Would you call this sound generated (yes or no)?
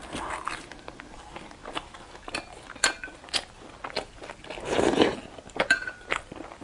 no